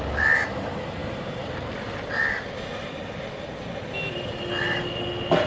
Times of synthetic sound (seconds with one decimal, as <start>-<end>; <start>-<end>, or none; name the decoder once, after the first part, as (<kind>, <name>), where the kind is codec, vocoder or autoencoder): none